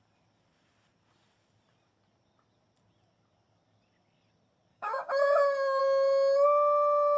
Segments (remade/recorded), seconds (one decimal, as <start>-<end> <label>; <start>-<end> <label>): 0.0-4.7 recorded; 4.7-5.8 remade; 5.8-7.2 recorded